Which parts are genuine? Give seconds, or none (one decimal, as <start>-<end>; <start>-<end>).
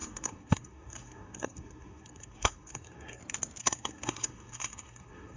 3.2-3.6